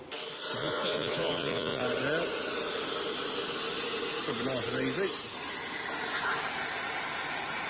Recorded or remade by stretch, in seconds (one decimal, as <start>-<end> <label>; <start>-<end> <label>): 0.0-0.6 recorded; 0.6-1.8 remade; 1.8-7.7 recorded